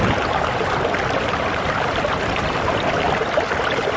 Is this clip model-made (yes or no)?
yes